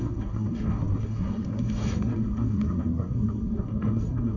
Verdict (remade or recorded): remade